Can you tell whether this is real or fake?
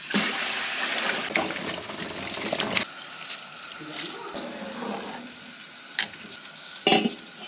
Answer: real